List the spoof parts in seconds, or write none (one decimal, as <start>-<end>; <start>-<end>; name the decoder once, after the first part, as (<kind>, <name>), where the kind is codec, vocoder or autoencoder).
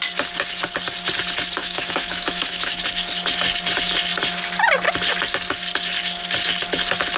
1.6-2.8 (autoencoder, DAC-VAE)